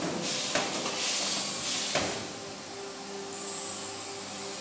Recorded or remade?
recorded